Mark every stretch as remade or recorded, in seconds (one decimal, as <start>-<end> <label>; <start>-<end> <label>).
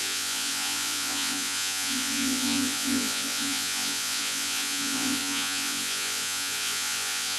0.0-7.4 remade